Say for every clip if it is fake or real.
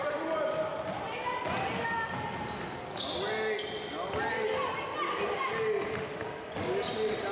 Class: real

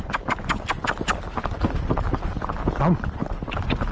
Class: real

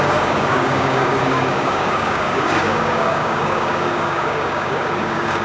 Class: fake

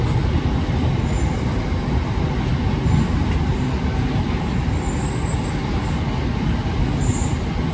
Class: real